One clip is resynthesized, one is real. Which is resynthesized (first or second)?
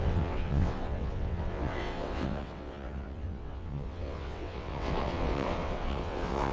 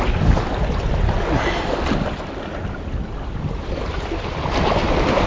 first